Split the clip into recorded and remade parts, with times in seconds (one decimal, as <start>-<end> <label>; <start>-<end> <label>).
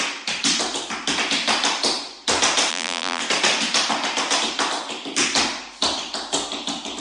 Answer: 0.0-2.7 recorded; 2.7-3.2 remade; 3.2-7.0 recorded